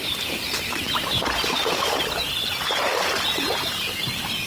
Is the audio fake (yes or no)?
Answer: no